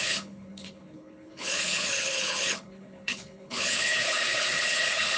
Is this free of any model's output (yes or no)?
no